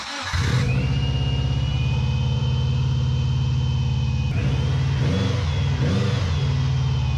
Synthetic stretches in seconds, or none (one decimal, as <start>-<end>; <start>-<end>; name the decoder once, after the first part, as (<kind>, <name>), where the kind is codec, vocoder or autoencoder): none